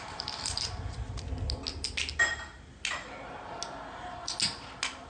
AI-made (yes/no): no